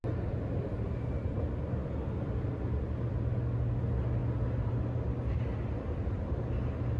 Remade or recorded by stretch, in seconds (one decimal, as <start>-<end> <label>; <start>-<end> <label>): 0.0-1.8 recorded; 1.8-2.5 remade; 2.5-7.0 recorded